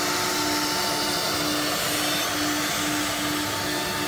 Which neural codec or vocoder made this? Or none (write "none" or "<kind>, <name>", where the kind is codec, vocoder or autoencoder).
none